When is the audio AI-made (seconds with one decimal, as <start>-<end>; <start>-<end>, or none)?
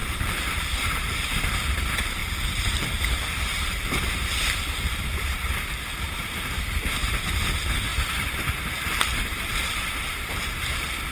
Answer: 0.0-1.4; 2.2-7.2; 7.9-11.1